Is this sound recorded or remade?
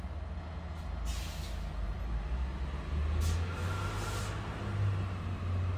recorded